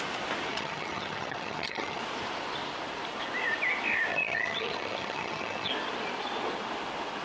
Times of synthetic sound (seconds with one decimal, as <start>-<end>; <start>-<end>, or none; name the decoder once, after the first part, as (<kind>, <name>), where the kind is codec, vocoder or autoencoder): 0.5-2.0 (vocoder, HiFi-GAN); 4.1-5.7